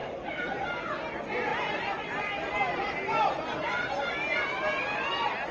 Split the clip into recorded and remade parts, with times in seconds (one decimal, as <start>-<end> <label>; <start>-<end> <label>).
0.0-0.7 remade; 0.7-1.5 recorded; 1.5-4.1 remade; 4.1-5.5 recorded